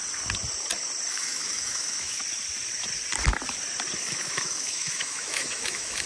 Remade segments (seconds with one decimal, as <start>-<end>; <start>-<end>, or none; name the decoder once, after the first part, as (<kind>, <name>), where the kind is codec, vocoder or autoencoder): 1.1-2.2 (autoencoder, DAC-VAE); 4.0-6.1